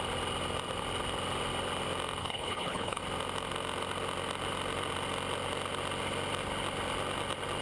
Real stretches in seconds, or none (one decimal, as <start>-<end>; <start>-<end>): 0.0-2.2; 3.0-7.6